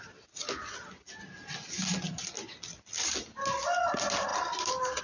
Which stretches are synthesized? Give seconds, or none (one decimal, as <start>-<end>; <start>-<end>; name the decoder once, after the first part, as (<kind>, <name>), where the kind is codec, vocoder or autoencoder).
none